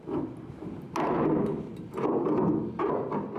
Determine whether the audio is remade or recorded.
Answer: recorded